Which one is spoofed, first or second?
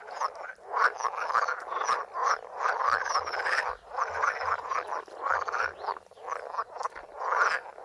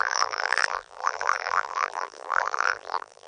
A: second